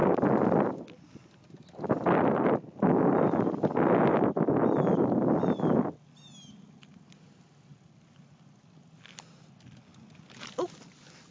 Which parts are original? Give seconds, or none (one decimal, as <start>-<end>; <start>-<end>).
0.0-11.3